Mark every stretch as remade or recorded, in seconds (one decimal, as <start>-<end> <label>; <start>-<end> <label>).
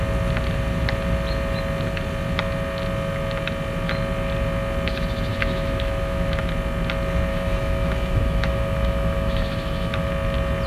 0.0-5.3 recorded; 5.3-6.5 remade; 6.5-7.3 recorded; 7.3-10.1 remade; 10.1-10.7 recorded